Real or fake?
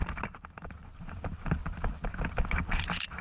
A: real